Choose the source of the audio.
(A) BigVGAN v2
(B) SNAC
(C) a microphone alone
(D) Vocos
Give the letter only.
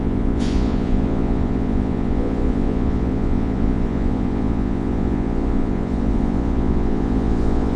D